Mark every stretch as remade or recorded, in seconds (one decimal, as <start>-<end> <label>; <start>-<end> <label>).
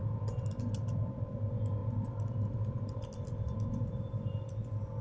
0.0-5.0 recorded